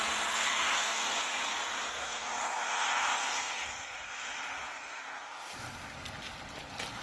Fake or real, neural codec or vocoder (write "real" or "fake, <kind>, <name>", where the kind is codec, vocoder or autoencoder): real